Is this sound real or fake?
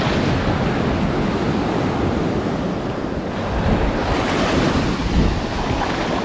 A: real